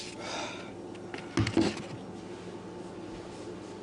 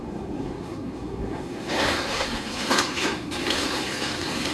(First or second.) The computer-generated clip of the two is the second